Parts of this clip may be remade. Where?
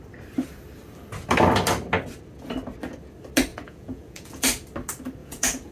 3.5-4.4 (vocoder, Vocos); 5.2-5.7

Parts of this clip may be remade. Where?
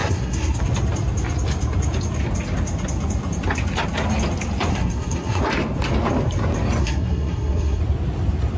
0.0-0.6 (codec, SNAC); 4.7-5.4; 6.8-7.8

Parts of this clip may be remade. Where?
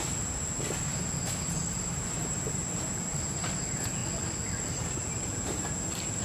0.0-4.0 (vocoder, BigVGAN v2); 4.6-6.2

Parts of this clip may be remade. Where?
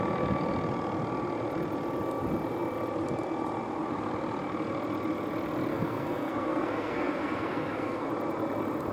5.7-8.1 (codec, SNAC)